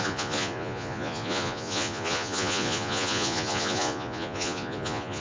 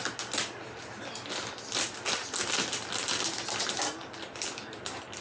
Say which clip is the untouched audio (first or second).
second